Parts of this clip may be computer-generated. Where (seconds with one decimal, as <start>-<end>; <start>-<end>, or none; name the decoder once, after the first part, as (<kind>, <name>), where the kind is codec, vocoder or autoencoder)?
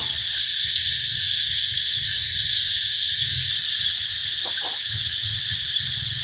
0.4-3.5 (codec, SNAC)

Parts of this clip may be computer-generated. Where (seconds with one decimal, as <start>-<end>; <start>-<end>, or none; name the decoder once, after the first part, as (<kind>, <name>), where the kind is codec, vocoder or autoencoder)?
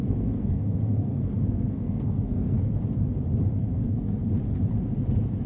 0.0-2.7 (codec, SNAC); 3.6-4.3